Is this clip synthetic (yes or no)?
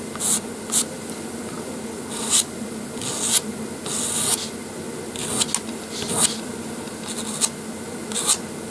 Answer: no